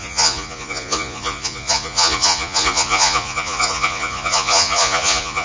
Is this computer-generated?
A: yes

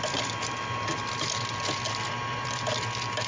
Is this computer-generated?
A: no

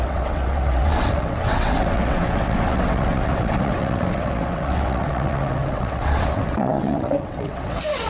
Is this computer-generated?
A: yes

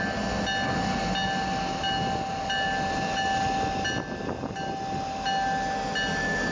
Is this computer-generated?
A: no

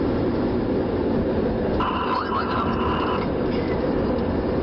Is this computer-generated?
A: no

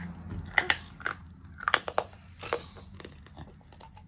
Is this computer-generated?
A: no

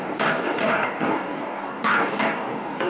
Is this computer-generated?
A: yes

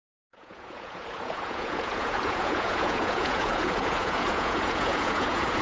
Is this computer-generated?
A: yes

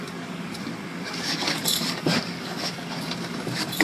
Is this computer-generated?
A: yes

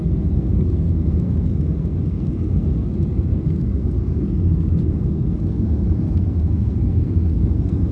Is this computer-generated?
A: yes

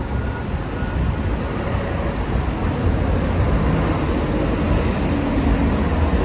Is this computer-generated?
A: no